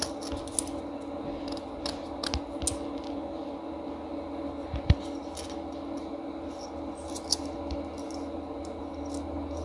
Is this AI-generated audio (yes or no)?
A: no